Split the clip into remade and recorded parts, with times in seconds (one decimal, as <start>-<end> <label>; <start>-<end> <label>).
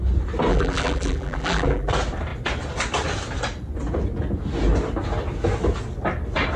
0.0-0.5 recorded; 0.5-1.9 remade; 1.9-6.6 recorded